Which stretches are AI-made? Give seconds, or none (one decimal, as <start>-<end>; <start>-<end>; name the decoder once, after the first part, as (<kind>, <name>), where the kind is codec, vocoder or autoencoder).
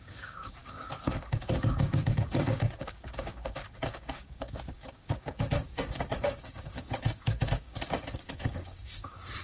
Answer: 0.0-9.4 (codec, DAC)